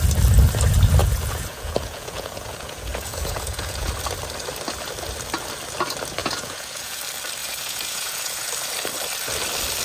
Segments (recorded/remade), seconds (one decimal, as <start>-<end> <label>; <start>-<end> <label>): 0.0-1.0 recorded; 1.0-3.9 remade; 3.9-6.2 recorded; 6.2-7.0 remade; 7.0-7.4 recorded; 7.4-8.5 remade; 8.5-9.8 recorded